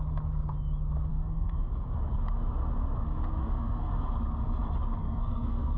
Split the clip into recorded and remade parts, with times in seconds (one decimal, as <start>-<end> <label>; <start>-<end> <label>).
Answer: 0.0-1.1 recorded; 1.1-1.6 remade; 1.6-3.4 recorded; 3.4-3.9 remade; 3.9-5.0 recorded; 5.0-5.8 remade